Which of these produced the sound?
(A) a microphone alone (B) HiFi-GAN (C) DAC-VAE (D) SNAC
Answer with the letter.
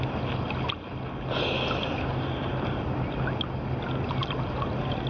A